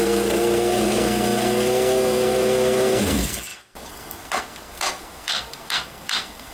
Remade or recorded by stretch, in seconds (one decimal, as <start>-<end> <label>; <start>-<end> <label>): 0.0-6.5 remade

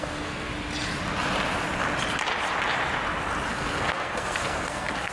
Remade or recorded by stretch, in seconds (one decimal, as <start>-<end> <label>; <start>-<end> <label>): 0.0-0.5 remade; 0.5-3.5 recorded; 3.5-5.1 remade

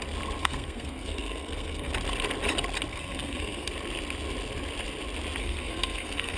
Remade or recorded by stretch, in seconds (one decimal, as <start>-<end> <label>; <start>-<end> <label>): 0.0-0.4 recorded; 0.4-1.9 remade; 1.9-2.9 recorded; 2.9-3.7 remade; 3.7-5.4 recorded; 5.4-6.4 remade

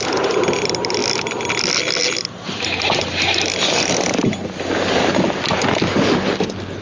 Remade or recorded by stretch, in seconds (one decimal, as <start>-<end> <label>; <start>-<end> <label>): 0.0-6.8 recorded

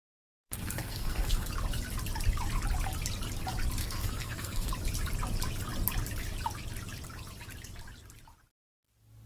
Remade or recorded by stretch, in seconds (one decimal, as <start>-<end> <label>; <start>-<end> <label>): 0.0-1.5 remade; 1.5-3.8 recorded; 3.8-4.7 remade; 4.7-9.3 recorded